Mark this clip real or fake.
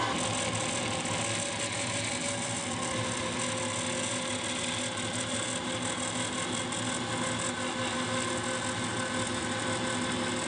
real